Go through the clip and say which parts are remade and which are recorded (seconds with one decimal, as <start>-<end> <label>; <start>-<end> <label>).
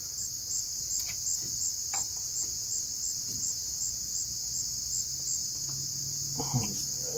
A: 0.0-2.1 recorded; 2.1-2.7 remade; 2.7-7.2 recorded